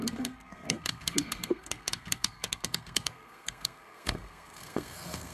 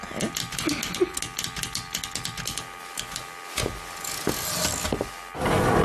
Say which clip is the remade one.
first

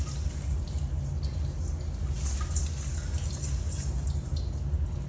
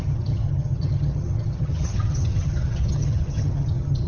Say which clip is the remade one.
second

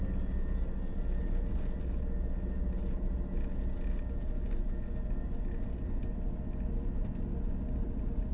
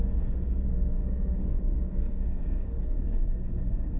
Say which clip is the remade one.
second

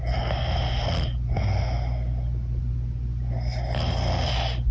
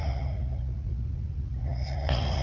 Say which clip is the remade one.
second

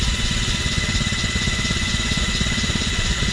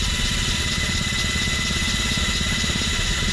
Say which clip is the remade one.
first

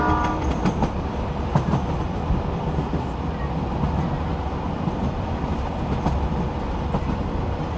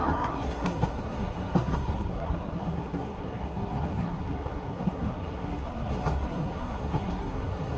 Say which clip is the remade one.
second